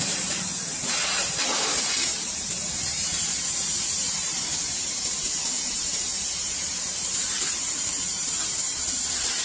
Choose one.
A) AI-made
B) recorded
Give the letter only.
A